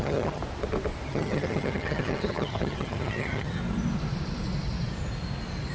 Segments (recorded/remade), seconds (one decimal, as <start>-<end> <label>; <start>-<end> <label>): 0.0-0.4 remade; 0.4-1.1 recorded; 1.1-3.6 remade; 3.6-5.7 recorded